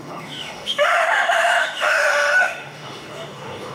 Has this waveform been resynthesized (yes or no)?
yes